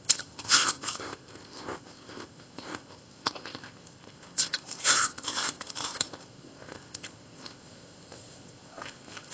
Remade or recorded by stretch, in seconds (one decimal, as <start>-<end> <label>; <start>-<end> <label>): 0.0-9.3 remade